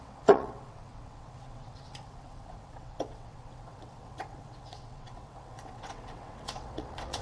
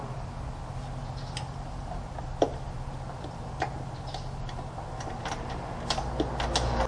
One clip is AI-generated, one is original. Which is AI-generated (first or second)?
first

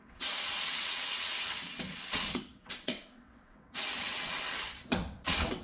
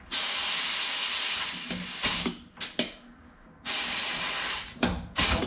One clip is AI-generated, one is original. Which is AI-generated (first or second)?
first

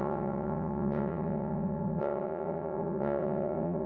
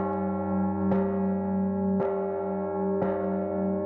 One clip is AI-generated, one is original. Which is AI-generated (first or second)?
first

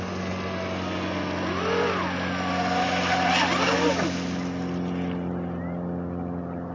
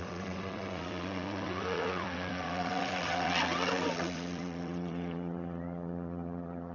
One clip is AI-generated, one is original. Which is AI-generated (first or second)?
second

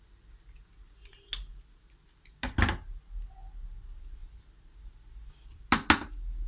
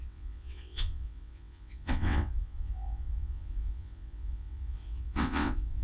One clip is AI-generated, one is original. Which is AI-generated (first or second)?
second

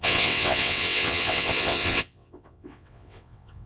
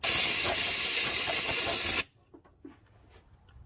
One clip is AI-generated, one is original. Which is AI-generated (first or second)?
first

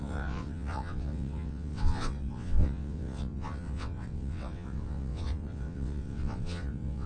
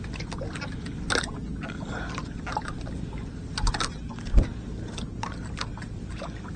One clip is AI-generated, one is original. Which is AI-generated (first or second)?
first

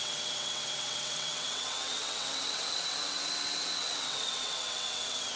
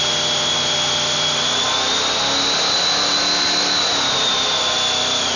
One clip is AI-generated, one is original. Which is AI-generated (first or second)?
first